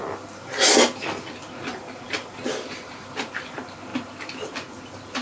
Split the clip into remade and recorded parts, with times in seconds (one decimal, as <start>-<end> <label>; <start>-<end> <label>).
0.0-1.7 recorded; 1.7-2.8 remade; 2.8-5.2 recorded